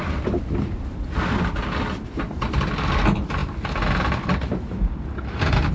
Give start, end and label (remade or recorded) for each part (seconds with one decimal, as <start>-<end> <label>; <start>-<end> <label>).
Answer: 0.0-5.7 recorded